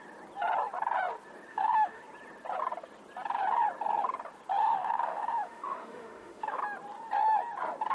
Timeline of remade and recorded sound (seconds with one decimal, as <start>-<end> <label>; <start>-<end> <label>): 0.0-1.5 recorded; 1.5-2.0 remade; 2.0-4.6 recorded; 4.6-6.6 remade; 6.6-7.9 recorded